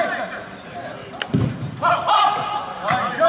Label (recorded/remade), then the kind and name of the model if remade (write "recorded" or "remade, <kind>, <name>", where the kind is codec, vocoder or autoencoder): remade, vocoder, BigVGAN v2